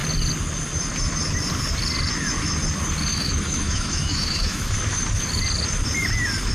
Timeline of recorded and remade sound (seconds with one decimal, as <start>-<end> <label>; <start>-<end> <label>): 0.0-3.1 recorded; 3.1-4.7 remade; 4.7-6.5 recorded